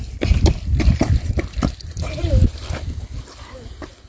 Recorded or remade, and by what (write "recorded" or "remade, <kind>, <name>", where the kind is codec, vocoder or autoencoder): recorded